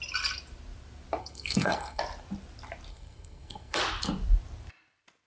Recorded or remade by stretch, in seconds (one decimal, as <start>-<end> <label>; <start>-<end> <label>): 0.0-1.2 recorded; 1.2-2.0 remade; 2.0-2.9 recorded; 2.9-3.8 remade; 3.8-5.3 recorded